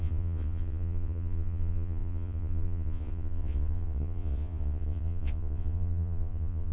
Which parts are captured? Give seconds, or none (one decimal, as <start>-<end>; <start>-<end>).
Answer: none